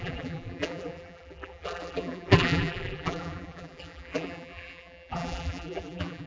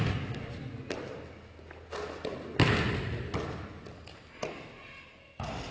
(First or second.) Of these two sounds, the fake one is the first